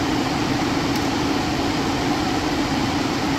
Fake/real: real